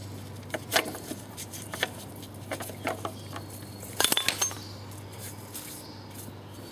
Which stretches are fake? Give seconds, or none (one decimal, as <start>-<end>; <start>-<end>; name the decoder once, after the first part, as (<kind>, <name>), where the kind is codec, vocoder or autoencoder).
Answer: 0.7-2.1 (vocoder, BigVGAN v2)